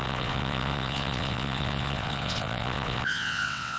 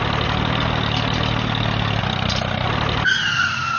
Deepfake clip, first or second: first